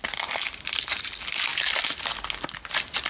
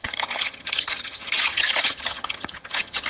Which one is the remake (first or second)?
second